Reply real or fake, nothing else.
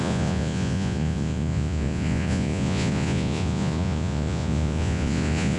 fake